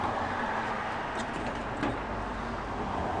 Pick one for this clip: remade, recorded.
recorded